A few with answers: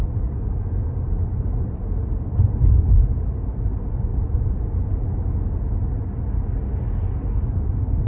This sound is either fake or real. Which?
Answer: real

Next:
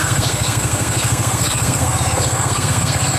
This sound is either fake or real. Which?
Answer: fake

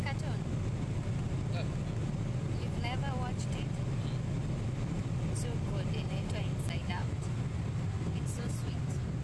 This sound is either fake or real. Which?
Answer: real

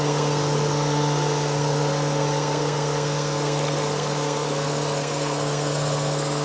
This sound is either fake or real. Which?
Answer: fake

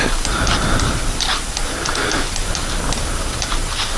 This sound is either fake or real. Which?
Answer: real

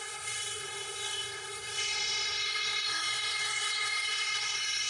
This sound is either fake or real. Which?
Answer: fake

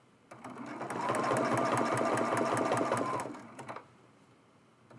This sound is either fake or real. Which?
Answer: real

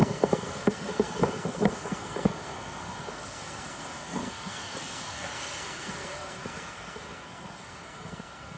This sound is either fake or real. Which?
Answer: fake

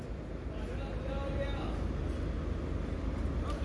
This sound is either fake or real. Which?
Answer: real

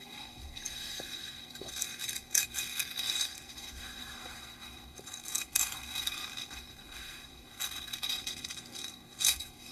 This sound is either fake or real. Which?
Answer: fake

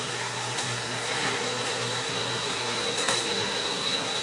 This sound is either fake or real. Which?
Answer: fake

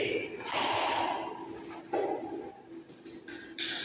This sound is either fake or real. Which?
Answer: real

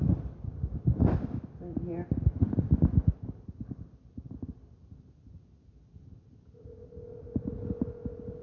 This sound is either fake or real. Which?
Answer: real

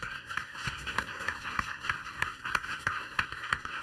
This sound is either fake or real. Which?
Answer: fake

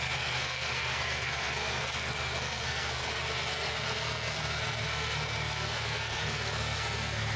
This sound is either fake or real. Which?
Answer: fake